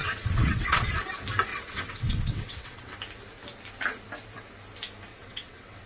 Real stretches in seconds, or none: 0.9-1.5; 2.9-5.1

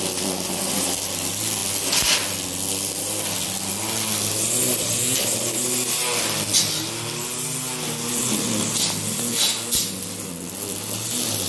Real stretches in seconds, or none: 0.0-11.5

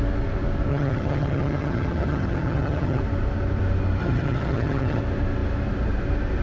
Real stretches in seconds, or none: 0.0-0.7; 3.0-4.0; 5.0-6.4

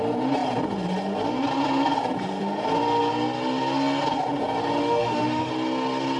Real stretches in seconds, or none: 0.0-4.8; 5.5-6.2